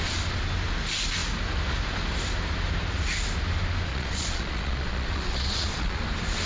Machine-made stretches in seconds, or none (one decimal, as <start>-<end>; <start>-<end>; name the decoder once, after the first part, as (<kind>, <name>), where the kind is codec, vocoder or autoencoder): 3.9-6.0 (vocoder, Vocos)